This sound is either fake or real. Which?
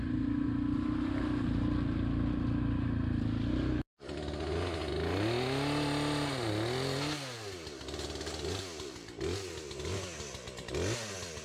real